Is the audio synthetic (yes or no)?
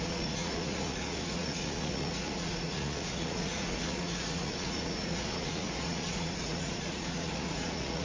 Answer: yes